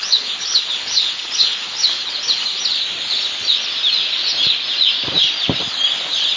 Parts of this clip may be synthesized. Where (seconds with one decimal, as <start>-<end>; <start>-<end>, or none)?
0.0-2.6